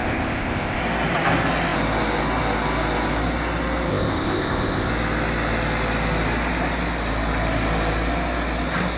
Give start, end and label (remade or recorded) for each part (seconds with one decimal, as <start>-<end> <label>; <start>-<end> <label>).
0.0-0.8 remade; 0.8-3.9 recorded; 3.9-4.9 remade; 4.9-9.0 recorded

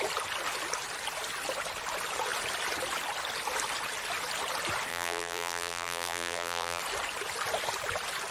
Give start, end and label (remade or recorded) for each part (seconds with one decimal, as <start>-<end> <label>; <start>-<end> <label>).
0.0-4.9 recorded; 4.9-6.8 remade; 6.8-8.3 recorded